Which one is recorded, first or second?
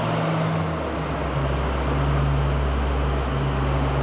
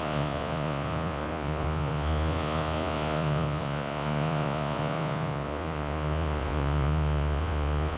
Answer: first